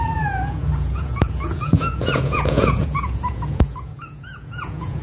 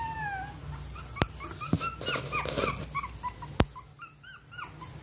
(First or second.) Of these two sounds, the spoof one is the first